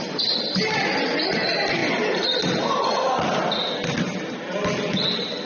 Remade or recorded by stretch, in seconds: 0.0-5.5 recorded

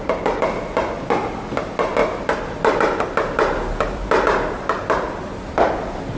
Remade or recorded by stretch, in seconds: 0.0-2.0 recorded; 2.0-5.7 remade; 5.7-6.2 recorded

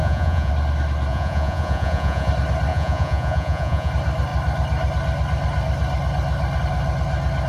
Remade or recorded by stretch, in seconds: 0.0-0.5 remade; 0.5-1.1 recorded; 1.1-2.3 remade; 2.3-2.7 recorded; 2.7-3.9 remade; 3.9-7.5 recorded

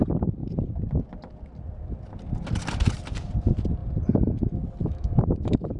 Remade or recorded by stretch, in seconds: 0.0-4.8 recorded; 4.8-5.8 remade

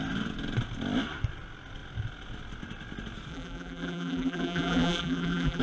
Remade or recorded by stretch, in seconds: 0.0-3.3 recorded; 3.3-5.6 remade

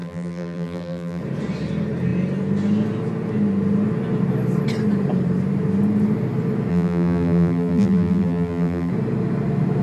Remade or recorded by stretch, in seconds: 0.0-1.2 remade; 1.2-6.7 recorded; 6.7-8.9 remade; 8.9-9.8 recorded

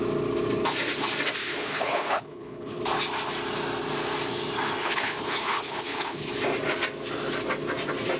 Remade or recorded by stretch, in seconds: 0.0-1.4 recorded; 1.4-2.8 remade; 2.8-4.8 recorded; 4.8-6.3 remade; 6.3-8.2 recorded